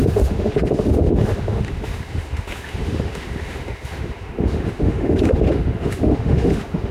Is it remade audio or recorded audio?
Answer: remade